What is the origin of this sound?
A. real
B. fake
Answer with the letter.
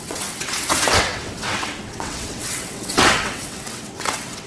B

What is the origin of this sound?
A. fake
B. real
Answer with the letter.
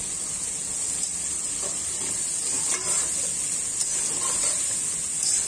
B